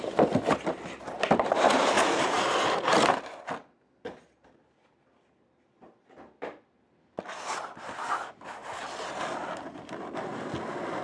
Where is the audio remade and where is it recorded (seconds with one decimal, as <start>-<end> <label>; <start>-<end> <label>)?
0.0-9.4 recorded; 9.4-11.0 remade